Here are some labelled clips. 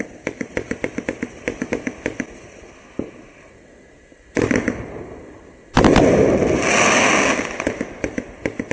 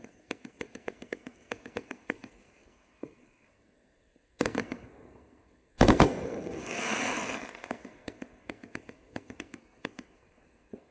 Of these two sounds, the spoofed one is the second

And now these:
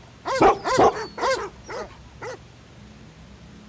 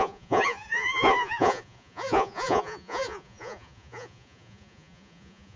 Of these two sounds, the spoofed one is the second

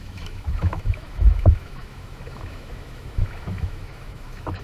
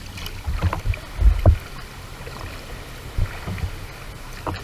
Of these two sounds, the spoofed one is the first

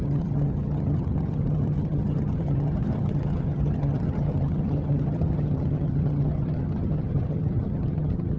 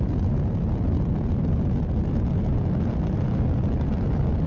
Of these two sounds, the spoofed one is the first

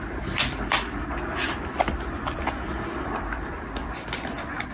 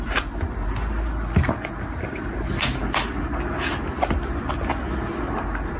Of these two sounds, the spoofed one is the first